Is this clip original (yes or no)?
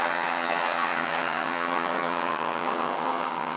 no